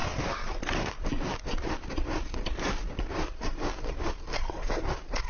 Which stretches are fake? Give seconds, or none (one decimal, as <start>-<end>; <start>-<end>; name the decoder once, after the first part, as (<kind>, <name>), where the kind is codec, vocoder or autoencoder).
none